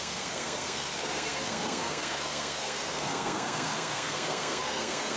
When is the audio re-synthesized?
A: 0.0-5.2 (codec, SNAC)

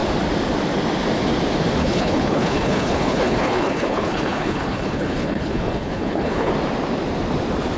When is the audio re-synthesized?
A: 1.8-6.5 (codec, HILCodec)

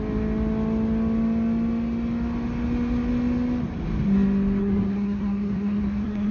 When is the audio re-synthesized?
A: 4.6-6.3 (codec, SNAC)

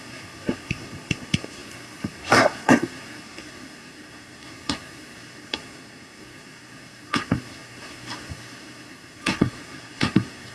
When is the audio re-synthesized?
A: 0.0-10.5 (codec, SNAC)

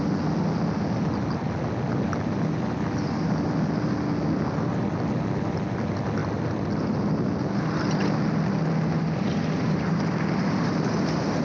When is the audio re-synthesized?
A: none

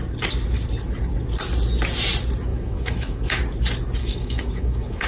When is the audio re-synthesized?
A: 2.5-3.4 (autoencoder, DAC-VAE); 4.0-5.1

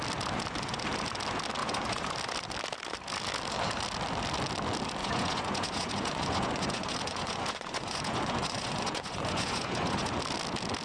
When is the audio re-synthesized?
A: 1.6-2.1 (vocoder, Vocos); 5.0-10.2